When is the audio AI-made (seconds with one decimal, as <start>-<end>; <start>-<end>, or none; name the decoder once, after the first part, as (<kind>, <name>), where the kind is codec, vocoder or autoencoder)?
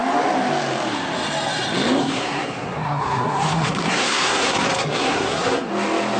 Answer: 2.0-5.7 (codec, SNAC)